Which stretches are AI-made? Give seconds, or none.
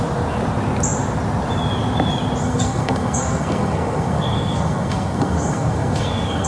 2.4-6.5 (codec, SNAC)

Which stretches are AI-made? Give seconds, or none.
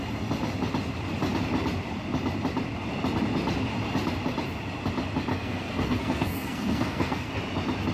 5.3-7.3 (codec, SNAC)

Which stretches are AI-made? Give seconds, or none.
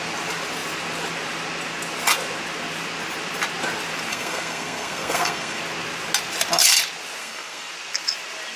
4.1-5.6 (codec, SNAC); 7.2-7.7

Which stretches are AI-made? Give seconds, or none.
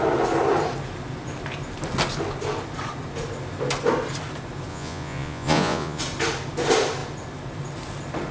4.7-6.0 (vocoder, Vocos)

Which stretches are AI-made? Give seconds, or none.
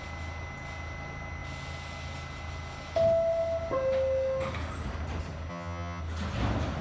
5.5-6.0 (vocoder, HiFi-GAN)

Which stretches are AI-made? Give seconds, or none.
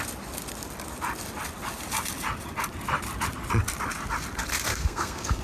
4.7-5.4 (codec, SNAC)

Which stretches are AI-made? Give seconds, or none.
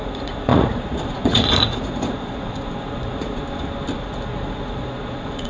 0.0-3.4 (vocoder, Vocos); 4.0-5.5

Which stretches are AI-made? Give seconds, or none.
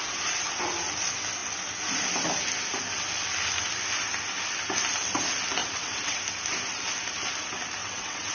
5.6-6.2 (vocoder, WaveNeXt); 7.8-8.3